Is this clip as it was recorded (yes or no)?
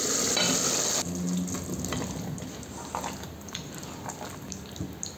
yes